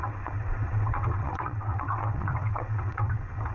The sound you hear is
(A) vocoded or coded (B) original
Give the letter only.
A